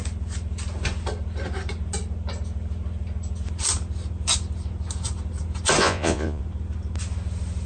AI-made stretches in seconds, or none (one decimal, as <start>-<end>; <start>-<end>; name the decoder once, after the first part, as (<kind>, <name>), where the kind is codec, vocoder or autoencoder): 5.8-6.4 (vocoder, Vocos)

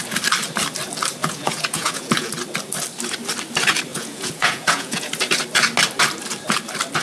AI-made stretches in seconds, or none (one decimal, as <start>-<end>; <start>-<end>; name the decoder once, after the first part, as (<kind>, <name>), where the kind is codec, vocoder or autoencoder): 1.2-2.3 (vocoder, Vocos); 3.9-5.1

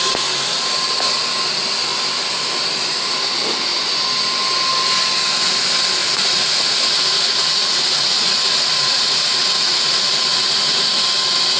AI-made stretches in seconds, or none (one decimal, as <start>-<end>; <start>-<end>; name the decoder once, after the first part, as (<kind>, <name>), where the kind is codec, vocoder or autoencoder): 6.0-10.9 (vocoder, Vocos)